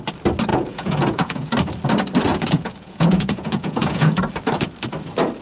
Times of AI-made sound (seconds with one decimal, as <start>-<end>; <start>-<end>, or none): 0.5-1.5; 2.3-4.2